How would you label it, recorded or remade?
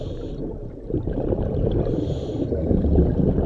recorded